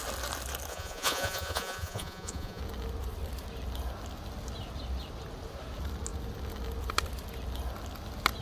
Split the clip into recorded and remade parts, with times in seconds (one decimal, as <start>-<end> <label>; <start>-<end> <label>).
0.0-0.7 recorded; 0.7-2.6 remade; 2.6-8.4 recorded